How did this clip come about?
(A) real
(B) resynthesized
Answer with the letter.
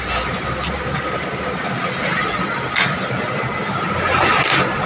A